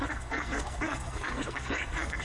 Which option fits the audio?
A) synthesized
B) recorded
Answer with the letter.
A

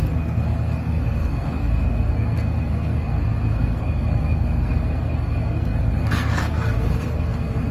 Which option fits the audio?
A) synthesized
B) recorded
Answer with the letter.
A